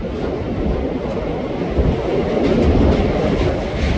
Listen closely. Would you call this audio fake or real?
real